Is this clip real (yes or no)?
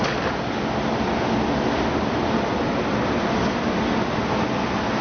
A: yes